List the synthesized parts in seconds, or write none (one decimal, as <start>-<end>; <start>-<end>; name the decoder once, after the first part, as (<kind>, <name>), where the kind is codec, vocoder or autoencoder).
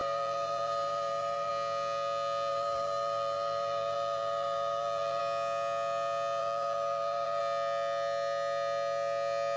0.0-1.5 (vocoder, BigVGAN v2); 2.5-5.2; 6.4-7.4